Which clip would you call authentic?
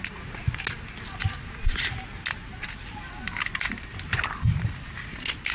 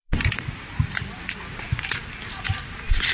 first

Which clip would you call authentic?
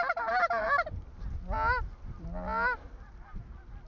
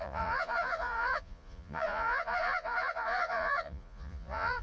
first